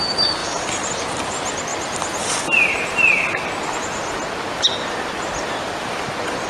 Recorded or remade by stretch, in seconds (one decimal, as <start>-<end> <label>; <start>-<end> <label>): 0.0-0.4 recorded; 0.4-0.9 remade; 0.9-6.5 recorded